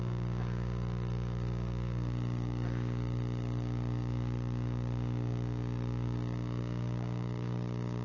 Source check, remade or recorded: remade